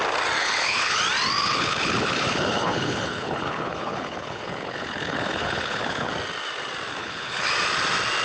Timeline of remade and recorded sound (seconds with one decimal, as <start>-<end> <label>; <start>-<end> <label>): 0.0-0.4 recorded; 0.4-1.0 remade; 1.0-1.4 recorded; 1.4-6.1 remade; 6.1-7.0 recorded; 7.0-7.5 remade; 7.5-8.2 recorded